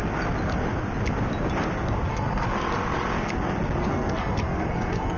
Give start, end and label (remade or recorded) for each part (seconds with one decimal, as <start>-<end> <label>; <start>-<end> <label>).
0.0-2.1 recorded; 2.1-2.5 remade; 2.5-3.8 recorded; 3.8-5.2 remade